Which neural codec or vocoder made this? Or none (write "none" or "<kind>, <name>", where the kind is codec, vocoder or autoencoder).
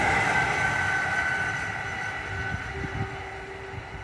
none